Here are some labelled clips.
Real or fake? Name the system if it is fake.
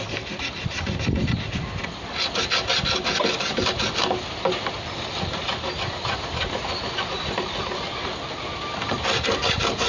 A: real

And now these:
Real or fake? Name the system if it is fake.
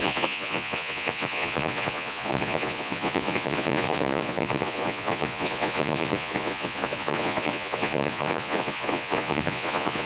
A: fake, vocoder, Vocos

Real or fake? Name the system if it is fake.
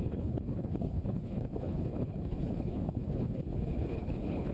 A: fake, codec, HILCodec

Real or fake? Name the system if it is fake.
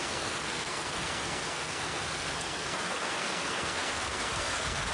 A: fake, codec, SNAC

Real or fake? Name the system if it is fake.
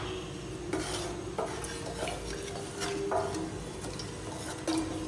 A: real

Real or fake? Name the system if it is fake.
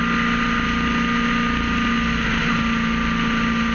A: real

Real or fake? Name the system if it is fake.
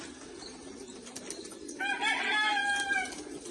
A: real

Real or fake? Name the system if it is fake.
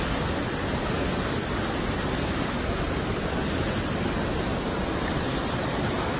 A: real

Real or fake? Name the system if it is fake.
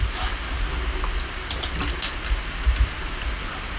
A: real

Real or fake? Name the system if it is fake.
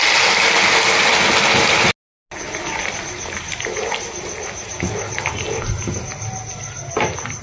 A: real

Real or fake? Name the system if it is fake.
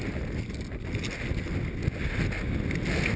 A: real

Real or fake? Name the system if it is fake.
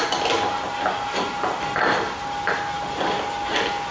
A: real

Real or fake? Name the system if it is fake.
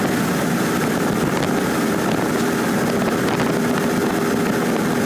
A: real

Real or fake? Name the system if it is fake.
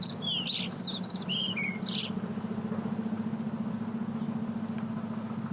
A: real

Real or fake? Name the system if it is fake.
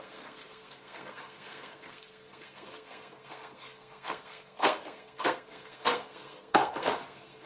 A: fake, codec, SNAC